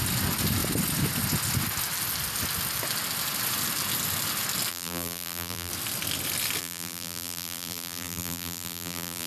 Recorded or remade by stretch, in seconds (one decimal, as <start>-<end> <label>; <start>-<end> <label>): 0.0-4.7 recorded; 4.7-5.7 remade; 5.7-6.6 recorded; 6.6-9.3 remade